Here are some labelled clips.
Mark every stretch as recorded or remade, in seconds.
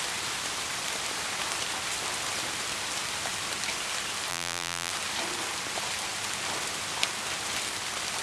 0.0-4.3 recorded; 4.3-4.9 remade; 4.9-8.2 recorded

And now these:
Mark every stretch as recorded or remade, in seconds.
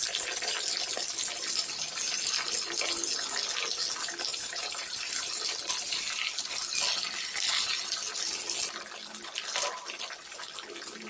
0.0-4.3 recorded; 4.3-5.1 remade; 5.1-11.1 recorded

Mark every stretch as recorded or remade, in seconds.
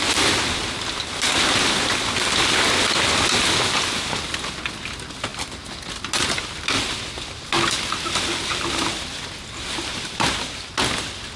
0.0-9.9 recorded; 9.9-10.6 remade; 10.6-11.4 recorded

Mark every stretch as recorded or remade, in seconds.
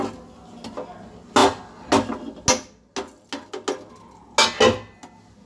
0.0-5.5 recorded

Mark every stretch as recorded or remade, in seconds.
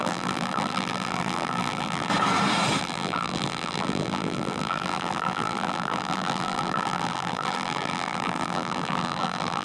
0.0-2.1 remade; 2.1-2.8 recorded; 2.8-9.6 remade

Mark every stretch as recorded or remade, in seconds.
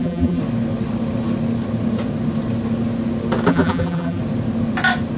0.0-0.4 remade; 0.4-3.5 recorded; 3.5-4.2 remade; 4.2-5.2 recorded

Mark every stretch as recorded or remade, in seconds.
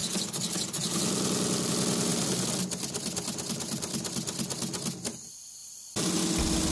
0.0-1.7 remade; 1.7-5.6 recorded; 5.6-6.2 remade; 6.2-6.7 recorded